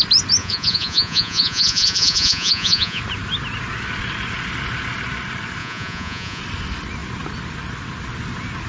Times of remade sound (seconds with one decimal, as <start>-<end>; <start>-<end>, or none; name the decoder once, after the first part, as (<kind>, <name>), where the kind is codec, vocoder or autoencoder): 0.4-3.0 (vocoder, Vocos); 5.6-6.4